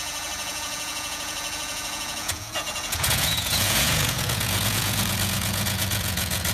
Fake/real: fake